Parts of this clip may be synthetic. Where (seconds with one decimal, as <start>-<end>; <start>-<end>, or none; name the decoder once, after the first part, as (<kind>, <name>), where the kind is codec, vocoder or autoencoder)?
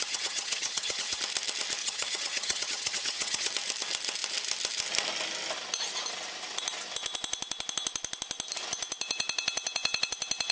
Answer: 0.0-1.2 (vocoder, HiFi-GAN); 1.8-3.5